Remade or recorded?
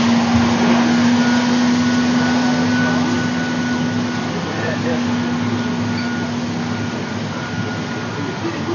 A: recorded